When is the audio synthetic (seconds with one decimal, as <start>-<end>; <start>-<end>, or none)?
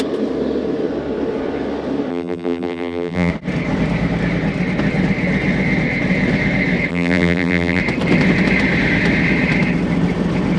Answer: 2.1-3.3; 6.9-7.8